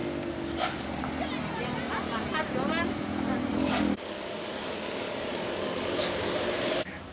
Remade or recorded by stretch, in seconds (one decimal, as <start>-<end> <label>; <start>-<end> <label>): 0.0-1.0 remade; 1.0-3.5 recorded; 3.5-7.1 remade